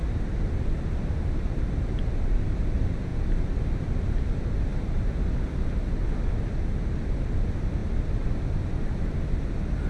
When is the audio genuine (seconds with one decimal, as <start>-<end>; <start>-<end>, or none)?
0.0-9.9